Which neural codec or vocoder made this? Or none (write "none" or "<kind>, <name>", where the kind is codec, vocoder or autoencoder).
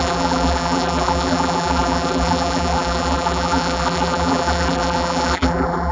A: vocoder, BigVGAN v2